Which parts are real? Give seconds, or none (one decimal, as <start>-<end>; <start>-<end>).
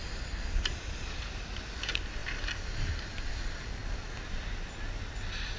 0.0-5.6